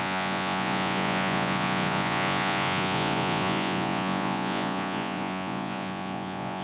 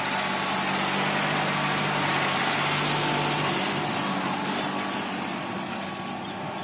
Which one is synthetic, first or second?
first